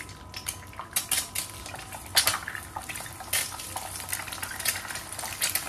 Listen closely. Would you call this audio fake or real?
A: real